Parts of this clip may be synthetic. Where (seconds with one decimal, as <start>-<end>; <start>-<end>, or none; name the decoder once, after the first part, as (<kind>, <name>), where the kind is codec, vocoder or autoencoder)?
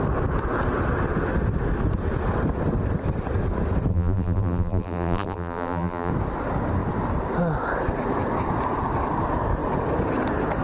3.9-6.1 (vocoder, BigVGAN v2)